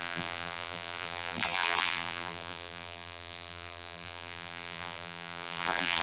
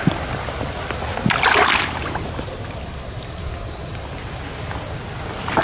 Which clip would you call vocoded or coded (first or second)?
first